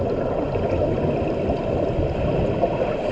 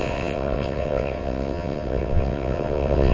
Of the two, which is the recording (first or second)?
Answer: first